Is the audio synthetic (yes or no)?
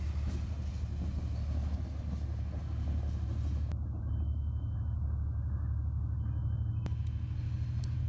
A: no